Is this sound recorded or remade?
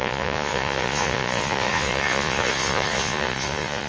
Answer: remade